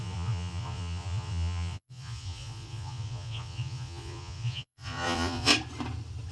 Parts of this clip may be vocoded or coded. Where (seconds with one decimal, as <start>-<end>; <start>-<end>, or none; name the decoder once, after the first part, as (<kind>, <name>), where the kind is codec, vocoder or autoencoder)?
0.0-5.5 (vocoder, Vocos)